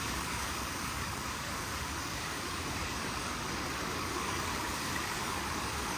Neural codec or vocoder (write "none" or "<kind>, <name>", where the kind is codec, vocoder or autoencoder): codec, DAC